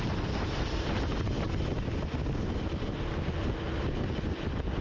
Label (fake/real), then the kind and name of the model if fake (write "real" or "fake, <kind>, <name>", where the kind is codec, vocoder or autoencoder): real